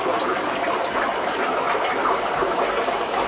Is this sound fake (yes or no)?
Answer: no